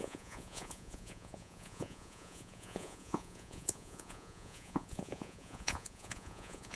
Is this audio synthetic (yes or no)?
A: yes